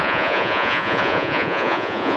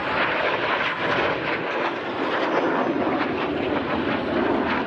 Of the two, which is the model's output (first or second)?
first